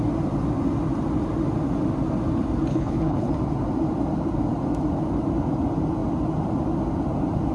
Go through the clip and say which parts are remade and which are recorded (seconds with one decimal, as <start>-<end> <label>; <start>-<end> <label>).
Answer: 0.0-2.7 recorded; 2.7-3.3 remade; 3.3-7.5 recorded